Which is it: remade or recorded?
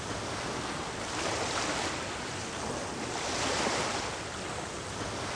recorded